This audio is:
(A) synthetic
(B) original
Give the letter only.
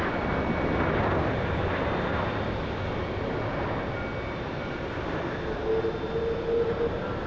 B